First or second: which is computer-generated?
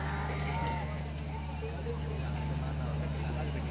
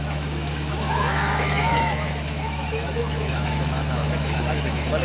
second